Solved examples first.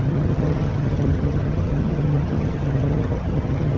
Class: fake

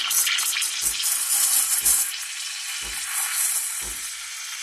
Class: real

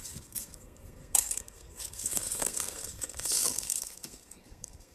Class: fake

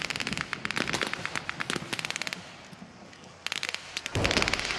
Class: real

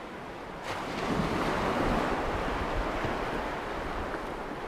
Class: real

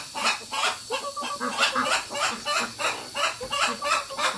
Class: real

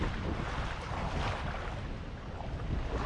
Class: real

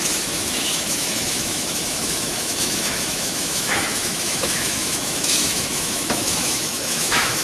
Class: fake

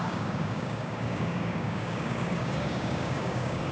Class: fake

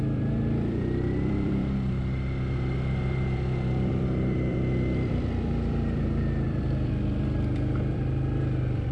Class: fake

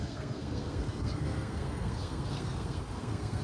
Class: fake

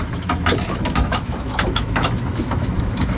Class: fake